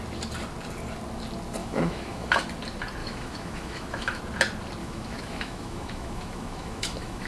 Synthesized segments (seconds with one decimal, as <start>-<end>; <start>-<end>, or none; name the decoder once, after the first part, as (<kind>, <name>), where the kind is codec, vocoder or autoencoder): 1.6-2.4 (autoencoder, DAC-VAE); 3.0-4.2; 4.8-7.3